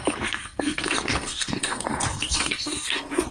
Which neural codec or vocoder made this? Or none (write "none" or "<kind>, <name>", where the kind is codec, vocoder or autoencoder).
codec, SNAC